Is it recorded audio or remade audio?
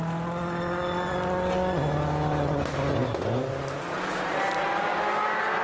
recorded